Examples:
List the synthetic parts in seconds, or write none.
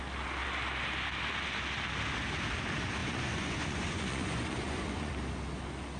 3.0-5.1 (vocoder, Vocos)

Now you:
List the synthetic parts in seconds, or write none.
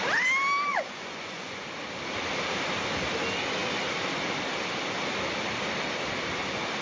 0.7-1.6 (vocoder, Vocos)